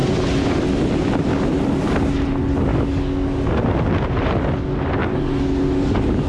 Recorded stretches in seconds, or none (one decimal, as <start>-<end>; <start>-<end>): 0.0-2.7; 3.6-5.0